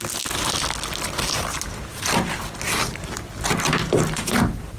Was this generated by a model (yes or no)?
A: no